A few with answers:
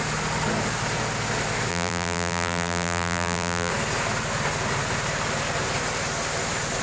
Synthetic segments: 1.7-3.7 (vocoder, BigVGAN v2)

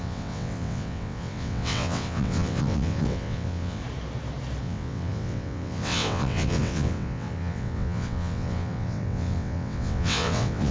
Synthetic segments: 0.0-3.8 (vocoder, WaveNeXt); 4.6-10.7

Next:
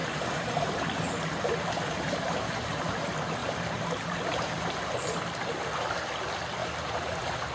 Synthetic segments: 0.0-2.9 (vocoder, BigVGAN v2); 3.4-5.0; 6.6-7.5